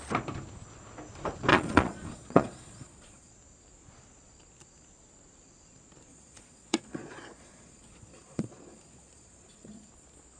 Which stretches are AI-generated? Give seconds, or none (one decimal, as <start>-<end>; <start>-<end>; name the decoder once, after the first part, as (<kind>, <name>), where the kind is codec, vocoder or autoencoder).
1.5-3.3 (vocoder, Vocos); 6.1-9.9

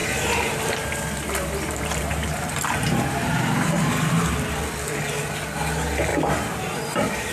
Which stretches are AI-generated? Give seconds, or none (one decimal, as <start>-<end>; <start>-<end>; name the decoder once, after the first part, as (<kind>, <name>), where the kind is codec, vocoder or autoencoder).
0.0-3.9 (vocoder, BigVGAN v2); 6.1-7.3

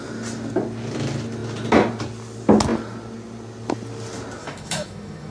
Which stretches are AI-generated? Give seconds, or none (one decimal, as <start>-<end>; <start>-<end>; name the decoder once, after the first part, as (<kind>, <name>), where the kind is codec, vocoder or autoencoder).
4.4-5.3 (autoencoder, DAC-VAE)

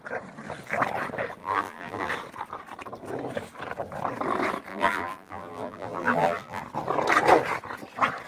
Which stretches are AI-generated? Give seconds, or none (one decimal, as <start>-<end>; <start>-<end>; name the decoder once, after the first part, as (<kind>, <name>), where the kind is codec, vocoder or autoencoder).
1.4-2.1 (vocoder, BigVGAN v2); 4.7-6.6

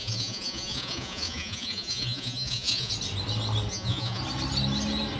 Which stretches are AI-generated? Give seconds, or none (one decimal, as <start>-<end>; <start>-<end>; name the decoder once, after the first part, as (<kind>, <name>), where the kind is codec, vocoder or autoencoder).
0.0-2.9 (vocoder, Vocos); 3.7-4.2

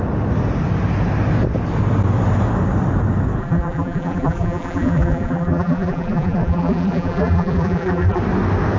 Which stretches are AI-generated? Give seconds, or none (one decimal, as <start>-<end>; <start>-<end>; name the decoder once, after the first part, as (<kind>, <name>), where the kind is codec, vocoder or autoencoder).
3.4-8.2 (vocoder, BigVGAN v2)

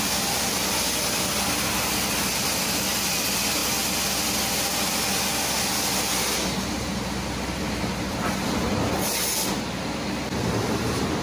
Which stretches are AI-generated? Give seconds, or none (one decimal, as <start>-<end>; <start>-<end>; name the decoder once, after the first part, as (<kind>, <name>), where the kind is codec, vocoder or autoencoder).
none